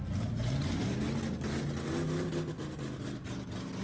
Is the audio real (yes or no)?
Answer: yes